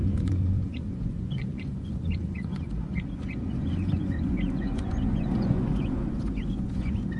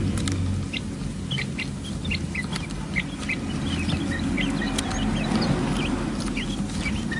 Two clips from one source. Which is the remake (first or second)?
first